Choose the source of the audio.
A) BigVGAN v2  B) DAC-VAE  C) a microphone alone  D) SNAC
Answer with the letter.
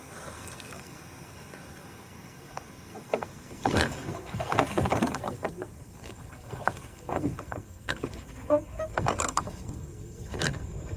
D